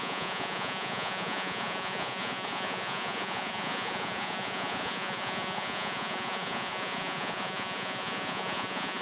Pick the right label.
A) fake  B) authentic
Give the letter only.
A